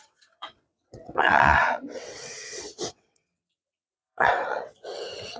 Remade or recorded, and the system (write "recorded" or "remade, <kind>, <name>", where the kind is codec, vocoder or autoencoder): remade, vocoder, WaveNeXt